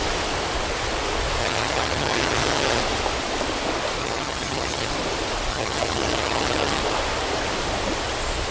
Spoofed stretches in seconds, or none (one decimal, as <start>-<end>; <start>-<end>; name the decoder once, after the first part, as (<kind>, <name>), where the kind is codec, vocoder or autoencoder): 1.4-2.8 (vocoder, HiFi-GAN); 4.0-4.9; 5.5-6.8